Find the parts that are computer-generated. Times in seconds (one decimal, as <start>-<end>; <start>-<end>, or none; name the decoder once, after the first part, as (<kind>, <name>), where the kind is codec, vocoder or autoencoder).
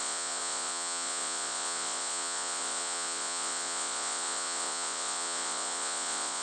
0.0-6.4 (vocoder, Vocos)